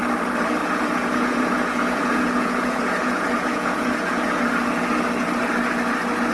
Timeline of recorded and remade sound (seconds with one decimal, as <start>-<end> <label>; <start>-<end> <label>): 0.0-0.6 recorded; 0.6-4.4 remade; 4.4-6.3 recorded